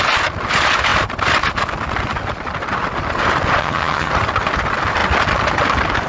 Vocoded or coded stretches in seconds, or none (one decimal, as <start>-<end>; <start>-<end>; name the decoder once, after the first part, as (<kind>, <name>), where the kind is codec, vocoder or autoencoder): 3.6-4.1 (vocoder, HiFi-GAN)